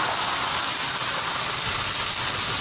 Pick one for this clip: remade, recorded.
recorded